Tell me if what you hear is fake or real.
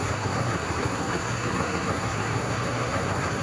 fake